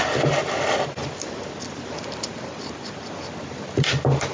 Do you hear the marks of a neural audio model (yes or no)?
yes